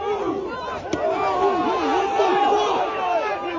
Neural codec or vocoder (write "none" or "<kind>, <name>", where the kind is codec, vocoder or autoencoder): none